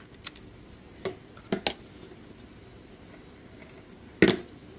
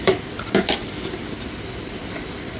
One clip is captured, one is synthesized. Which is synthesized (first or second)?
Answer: second